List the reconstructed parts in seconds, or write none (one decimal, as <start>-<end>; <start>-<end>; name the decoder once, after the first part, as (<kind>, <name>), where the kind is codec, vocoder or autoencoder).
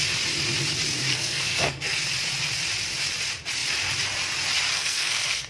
1.1-2.0 (codec, SNAC); 4.7-5.5